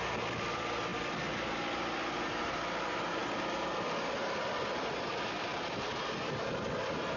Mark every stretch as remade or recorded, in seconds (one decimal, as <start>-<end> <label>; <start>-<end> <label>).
0.0-7.2 recorded